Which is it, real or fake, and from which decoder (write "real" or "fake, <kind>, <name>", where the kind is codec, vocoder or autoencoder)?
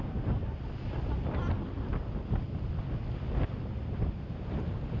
real